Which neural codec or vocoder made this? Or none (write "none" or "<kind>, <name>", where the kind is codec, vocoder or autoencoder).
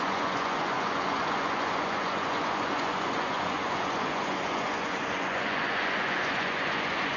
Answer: vocoder, Vocos